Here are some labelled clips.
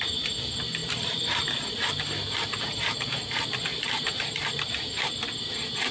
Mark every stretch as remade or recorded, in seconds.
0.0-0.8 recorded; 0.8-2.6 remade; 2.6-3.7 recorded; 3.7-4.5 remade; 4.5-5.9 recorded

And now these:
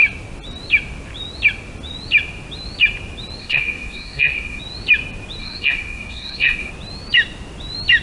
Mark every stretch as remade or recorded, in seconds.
0.0-3.4 recorded; 3.4-4.6 remade; 4.6-5.4 recorded; 5.4-6.7 remade; 6.7-8.0 recorded

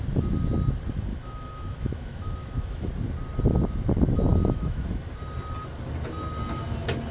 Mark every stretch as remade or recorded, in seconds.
0.0-1.1 recorded; 1.1-2.9 remade; 2.9-4.3 recorded; 4.3-4.9 remade; 4.9-7.1 recorded

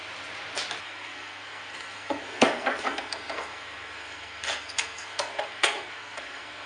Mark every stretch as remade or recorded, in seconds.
0.0-0.8 recorded; 0.8-6.7 remade

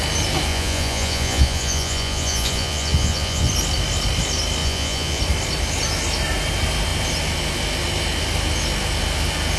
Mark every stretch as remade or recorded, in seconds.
0.0-0.5 recorded; 0.5-3.5 remade; 3.5-4.6 recorded; 4.6-5.2 remade; 5.2-9.6 recorded

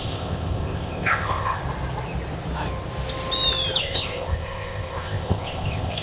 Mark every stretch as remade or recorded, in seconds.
0.0-1.6 remade; 1.6-3.8 recorded; 3.8-6.0 remade

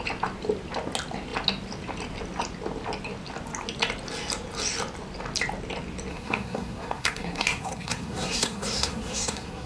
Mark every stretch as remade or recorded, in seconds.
0.0-6.1 recorded; 6.1-9.7 remade

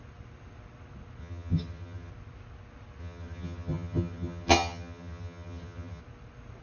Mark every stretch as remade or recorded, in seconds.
0.0-1.2 recorded; 1.2-2.1 remade; 2.1-3.0 recorded; 3.0-6.0 remade; 6.0-6.6 recorded